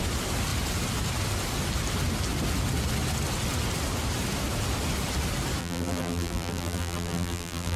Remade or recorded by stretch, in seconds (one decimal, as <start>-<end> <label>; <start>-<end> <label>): 0.0-5.6 recorded; 5.6-7.8 remade

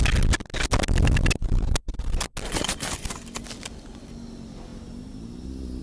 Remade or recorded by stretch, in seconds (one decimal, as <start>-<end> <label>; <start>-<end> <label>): 0.0-5.8 recorded

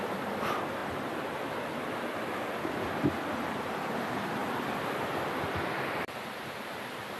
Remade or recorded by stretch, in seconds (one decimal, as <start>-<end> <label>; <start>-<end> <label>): 0.0-4.4 recorded; 4.4-6.4 remade; 6.4-7.2 recorded

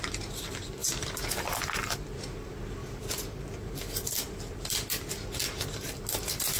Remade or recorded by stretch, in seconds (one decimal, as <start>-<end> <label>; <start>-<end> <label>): 0.0-0.8 recorded; 0.8-1.7 remade; 1.7-2.8 recorded; 2.8-3.4 remade; 3.4-6.6 recorded

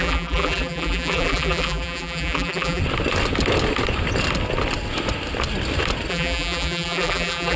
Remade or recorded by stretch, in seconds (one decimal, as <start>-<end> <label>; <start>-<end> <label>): 0.0-2.8 remade; 2.8-6.1 recorded; 6.1-7.6 remade

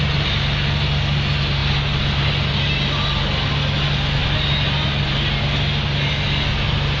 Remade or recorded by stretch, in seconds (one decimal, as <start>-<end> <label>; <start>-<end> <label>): 0.0-7.0 recorded

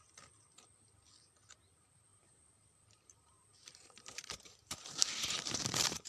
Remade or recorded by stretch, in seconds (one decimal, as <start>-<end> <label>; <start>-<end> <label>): 0.0-2.1 recorded; 2.1-6.1 remade